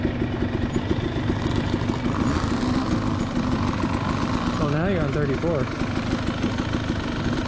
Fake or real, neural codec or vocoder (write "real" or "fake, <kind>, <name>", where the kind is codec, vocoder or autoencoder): real